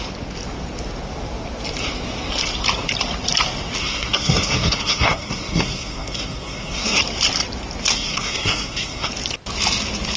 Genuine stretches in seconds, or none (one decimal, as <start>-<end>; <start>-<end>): 0.0-3.8; 7.0-7.9; 9.1-10.2